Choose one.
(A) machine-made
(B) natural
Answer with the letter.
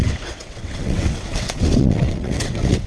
A